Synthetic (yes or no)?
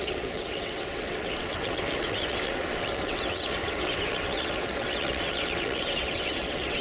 yes